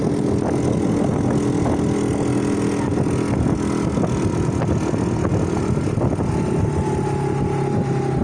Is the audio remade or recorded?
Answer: recorded